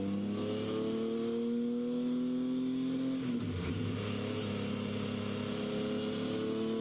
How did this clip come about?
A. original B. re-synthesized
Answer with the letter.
A